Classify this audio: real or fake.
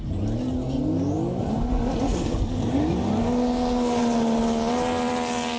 real